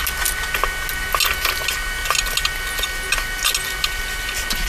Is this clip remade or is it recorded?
recorded